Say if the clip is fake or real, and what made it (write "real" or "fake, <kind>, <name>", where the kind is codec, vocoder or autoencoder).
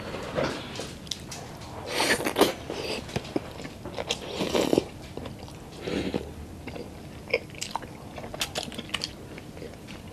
real